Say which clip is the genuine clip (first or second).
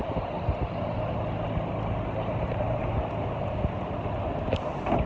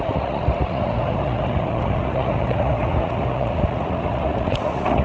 first